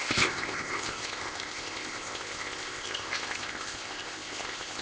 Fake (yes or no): yes